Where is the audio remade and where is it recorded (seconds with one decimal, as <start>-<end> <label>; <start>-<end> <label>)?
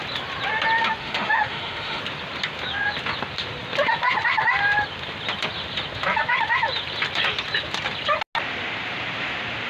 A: 0.0-1.0 recorded; 1.0-2.0 remade; 2.0-9.7 recorded